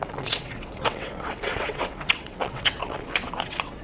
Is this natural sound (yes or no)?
no